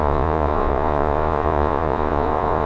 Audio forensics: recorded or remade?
remade